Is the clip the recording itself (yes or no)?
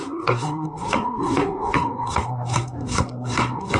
no